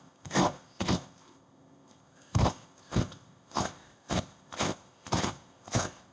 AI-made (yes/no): yes